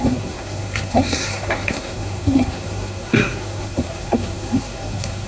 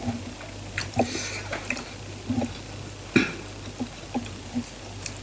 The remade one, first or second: first